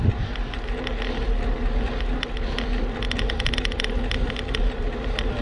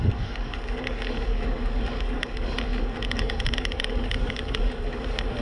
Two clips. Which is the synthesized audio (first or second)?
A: second